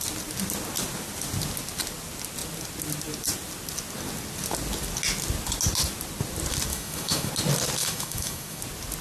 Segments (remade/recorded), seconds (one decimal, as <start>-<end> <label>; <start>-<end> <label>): 0.0-6.7 recorded; 6.7-7.3 remade; 7.3-7.8 recorded; 7.8-8.6 remade; 8.6-9.0 recorded